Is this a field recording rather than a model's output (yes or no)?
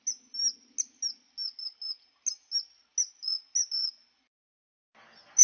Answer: yes